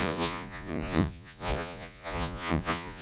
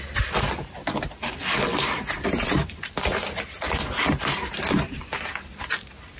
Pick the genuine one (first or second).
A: second